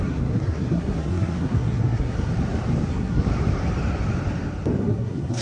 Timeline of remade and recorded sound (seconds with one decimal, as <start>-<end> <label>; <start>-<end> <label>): 0.0-2.3 remade; 2.3-2.9 recorded; 2.9-3.3 remade; 3.3-4.8 recorded; 4.8-5.4 remade